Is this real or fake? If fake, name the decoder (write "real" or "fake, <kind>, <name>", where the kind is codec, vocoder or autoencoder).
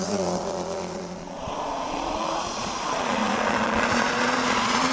fake, vocoder, Vocos